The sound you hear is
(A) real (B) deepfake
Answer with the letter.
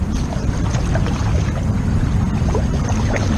A